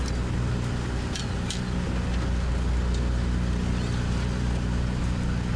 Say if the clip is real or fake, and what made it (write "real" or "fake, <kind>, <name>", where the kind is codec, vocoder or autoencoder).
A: real